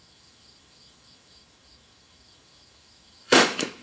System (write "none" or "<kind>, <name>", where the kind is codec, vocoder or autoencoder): autoencoder, DAC-VAE